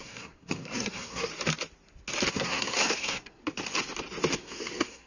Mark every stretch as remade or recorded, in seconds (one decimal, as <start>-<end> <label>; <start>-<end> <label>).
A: 0.0-1.3 remade; 1.3-2.3 recorded; 2.3-3.4 remade; 3.4-4.3 recorded; 4.3-5.1 remade